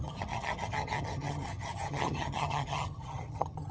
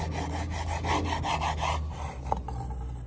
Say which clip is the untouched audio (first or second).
second